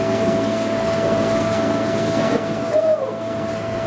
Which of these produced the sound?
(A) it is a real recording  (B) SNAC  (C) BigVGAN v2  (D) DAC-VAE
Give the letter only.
B